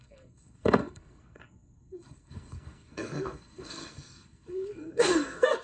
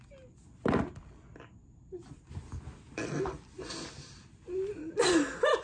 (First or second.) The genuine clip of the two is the second